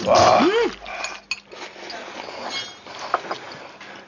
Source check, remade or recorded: recorded